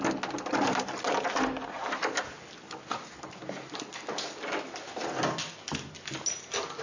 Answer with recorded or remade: recorded